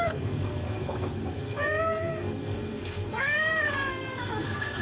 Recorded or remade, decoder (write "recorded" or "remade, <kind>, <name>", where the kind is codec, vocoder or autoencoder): remade, codec, SNAC